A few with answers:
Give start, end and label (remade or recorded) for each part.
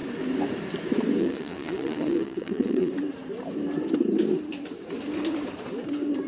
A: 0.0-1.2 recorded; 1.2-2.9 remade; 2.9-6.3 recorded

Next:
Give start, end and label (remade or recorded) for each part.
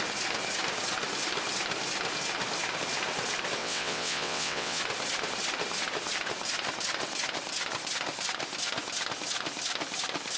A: 0.0-3.6 recorded; 3.6-4.8 remade; 4.8-10.4 recorded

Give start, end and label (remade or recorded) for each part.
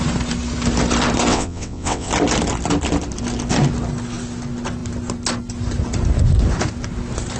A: 0.0-1.3 recorded; 1.3-2.1 remade; 2.1-7.4 recorded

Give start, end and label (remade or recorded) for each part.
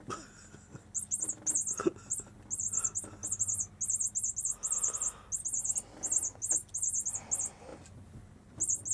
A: 0.0-8.9 recorded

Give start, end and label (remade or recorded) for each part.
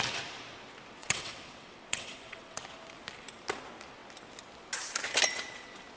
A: 0.0-1.0 recorded; 1.0-2.6 remade; 2.6-6.0 recorded